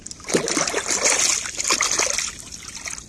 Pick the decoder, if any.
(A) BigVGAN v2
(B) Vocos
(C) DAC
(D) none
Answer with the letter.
D